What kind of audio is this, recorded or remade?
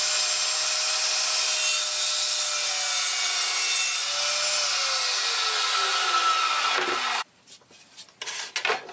recorded